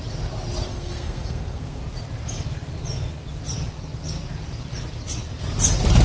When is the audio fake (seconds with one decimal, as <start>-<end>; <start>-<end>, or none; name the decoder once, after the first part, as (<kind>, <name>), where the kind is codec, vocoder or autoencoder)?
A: 0.7-1.8 (codec, SNAC)

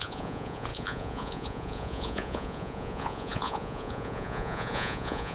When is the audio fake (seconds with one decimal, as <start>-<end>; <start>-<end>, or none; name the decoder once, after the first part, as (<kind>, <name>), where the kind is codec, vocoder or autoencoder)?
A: 0.0-5.3 (vocoder, Vocos)

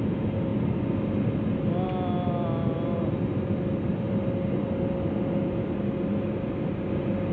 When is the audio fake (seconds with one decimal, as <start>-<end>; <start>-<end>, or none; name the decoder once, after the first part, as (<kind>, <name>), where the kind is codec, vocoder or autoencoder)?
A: none

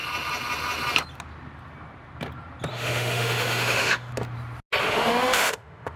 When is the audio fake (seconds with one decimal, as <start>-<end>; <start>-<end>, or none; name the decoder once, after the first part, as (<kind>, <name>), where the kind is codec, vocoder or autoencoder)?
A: 2.7-4.1 (autoencoder, DAC-VAE); 4.8-6.0